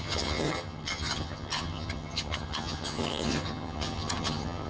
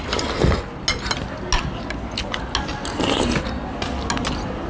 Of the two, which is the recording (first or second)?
second